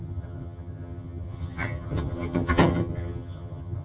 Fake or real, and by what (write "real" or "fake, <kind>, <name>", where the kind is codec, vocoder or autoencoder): fake, vocoder, HiFi-GAN